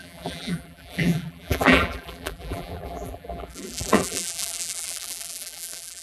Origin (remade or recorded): remade